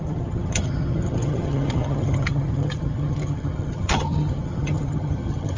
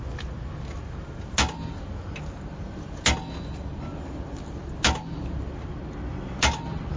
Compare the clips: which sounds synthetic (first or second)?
first